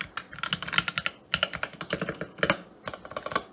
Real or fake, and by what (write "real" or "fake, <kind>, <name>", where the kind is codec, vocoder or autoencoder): real